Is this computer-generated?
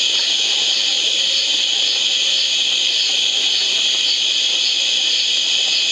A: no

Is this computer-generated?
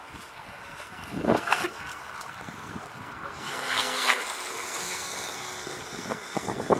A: yes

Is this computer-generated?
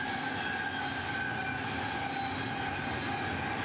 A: no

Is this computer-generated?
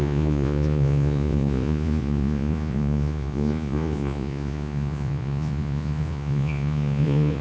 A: yes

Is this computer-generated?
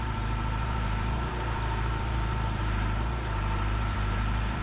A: yes